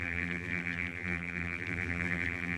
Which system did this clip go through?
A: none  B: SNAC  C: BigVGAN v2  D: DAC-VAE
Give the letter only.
C